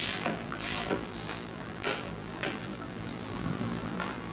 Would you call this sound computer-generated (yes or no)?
yes